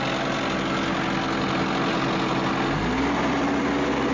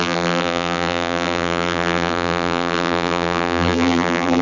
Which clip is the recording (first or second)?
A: first